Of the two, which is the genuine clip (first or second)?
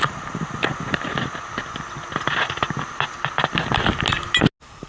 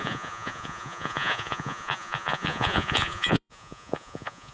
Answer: first